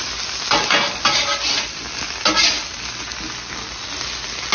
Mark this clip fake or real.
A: real